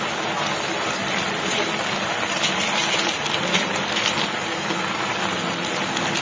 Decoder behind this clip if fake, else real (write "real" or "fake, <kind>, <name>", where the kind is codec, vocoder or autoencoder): real